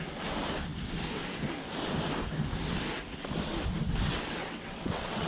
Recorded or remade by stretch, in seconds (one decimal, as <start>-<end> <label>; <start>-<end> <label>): 0.0-4.1 recorded; 4.1-5.3 remade